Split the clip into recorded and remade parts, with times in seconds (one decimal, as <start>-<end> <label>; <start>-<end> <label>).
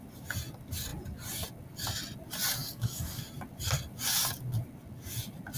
0.0-2.6 recorded; 2.6-3.2 remade; 3.2-5.6 recorded